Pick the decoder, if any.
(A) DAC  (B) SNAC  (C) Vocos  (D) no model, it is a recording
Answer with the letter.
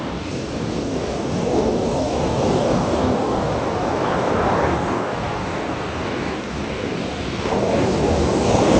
A